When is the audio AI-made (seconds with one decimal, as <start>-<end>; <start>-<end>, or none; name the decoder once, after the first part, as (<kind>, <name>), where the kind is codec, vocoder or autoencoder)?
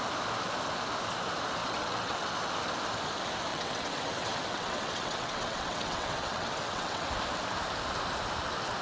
1.6-2.3 (vocoder, WaveNeXt); 3.5-7.1